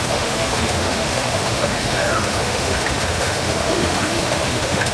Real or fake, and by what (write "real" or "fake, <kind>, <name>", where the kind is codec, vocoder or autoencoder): fake, autoencoder, DAC-VAE